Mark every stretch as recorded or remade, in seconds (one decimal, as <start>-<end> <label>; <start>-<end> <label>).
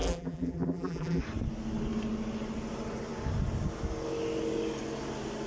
0.0-1.2 remade; 1.2-5.5 recorded